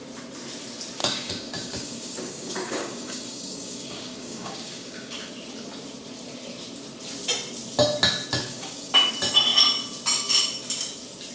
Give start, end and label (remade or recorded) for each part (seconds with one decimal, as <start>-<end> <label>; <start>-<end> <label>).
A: 0.0-1.0 recorded; 1.0-5.3 remade; 5.3-8.4 recorded; 8.4-8.9 remade; 8.9-11.3 recorded